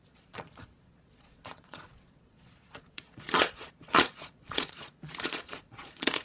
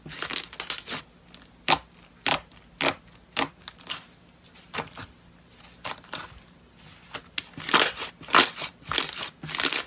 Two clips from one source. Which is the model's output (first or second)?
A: first